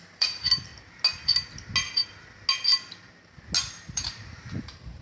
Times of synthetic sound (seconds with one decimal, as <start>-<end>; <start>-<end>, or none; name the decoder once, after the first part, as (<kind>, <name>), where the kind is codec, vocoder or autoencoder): 0.0-0.7 (vocoder, BigVGAN v2); 3.7-5.0